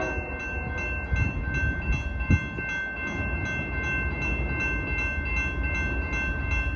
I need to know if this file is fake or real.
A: real